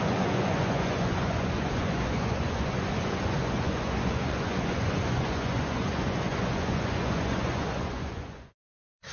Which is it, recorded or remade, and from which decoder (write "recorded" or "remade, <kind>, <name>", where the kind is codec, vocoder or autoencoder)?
remade, vocoder, Vocos